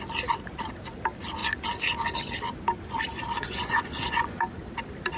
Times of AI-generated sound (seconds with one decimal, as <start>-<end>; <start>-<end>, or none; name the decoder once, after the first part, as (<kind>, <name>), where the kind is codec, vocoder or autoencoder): 3.4-4.4 (vocoder, Vocos)